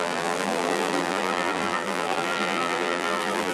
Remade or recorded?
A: remade